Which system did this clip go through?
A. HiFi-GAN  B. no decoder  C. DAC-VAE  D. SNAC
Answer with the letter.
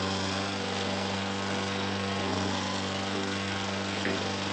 D